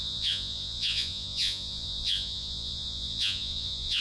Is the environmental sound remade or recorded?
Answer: remade